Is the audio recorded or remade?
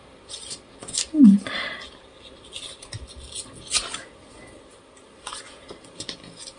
recorded